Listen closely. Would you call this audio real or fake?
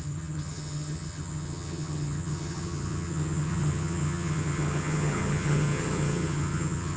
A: fake